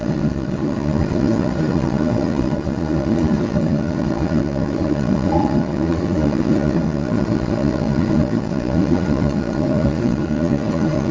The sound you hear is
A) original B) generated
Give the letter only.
B